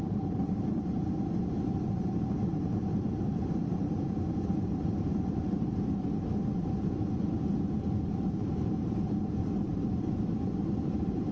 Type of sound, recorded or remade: remade